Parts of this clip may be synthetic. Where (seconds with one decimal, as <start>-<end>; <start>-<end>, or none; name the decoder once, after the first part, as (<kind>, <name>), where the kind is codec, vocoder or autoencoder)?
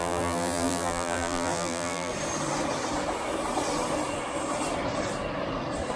0.0-2.1 (vocoder, BigVGAN v2)